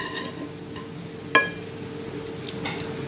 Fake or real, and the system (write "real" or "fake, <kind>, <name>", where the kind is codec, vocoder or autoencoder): real